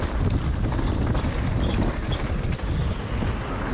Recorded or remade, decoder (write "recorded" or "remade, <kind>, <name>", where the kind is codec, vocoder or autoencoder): recorded